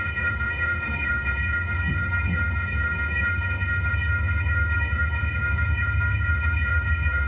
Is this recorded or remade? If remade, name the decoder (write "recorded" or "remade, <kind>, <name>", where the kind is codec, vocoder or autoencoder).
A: remade, autoencoder, DAC-VAE